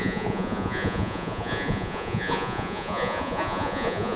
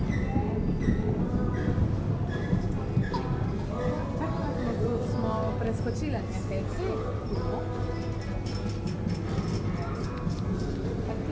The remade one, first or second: first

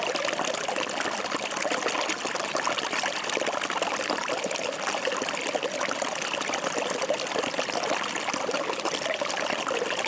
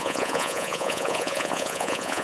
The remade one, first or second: second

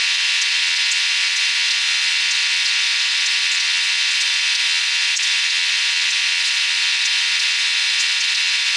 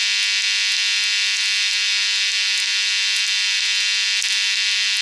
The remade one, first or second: first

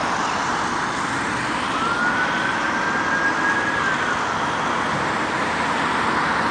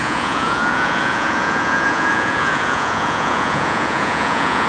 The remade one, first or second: second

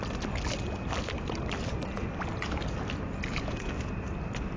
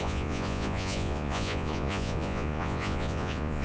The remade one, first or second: second